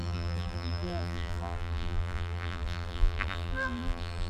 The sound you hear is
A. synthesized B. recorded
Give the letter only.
A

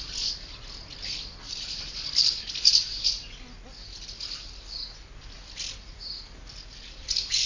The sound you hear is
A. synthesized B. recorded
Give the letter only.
B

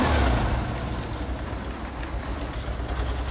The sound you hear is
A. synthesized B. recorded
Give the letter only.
B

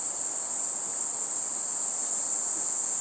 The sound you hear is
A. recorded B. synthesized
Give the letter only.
A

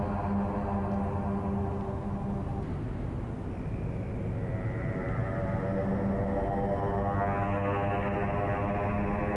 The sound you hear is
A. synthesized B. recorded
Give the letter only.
B